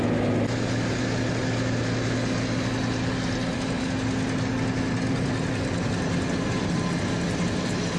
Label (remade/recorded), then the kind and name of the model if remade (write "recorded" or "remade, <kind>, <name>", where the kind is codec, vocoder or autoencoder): recorded